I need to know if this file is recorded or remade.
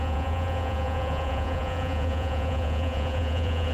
remade